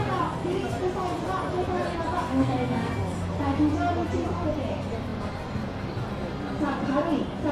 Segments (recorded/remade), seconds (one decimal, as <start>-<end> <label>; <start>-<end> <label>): 0.0-2.3 recorded; 2.3-2.9 remade; 2.9-7.5 recorded